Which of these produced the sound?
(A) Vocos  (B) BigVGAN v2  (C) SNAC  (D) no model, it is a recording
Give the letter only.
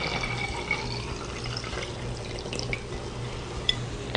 D